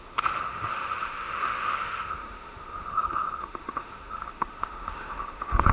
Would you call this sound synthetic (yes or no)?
yes